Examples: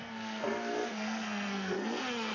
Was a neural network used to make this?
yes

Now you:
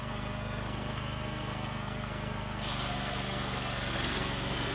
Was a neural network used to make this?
yes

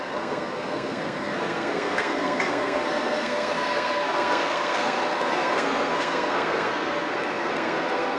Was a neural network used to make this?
yes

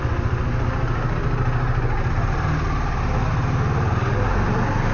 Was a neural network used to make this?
no